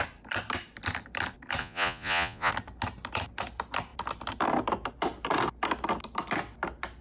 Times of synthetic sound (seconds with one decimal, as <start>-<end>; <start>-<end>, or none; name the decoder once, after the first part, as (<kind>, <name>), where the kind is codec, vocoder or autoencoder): 1.6-2.5 (vocoder, Vocos)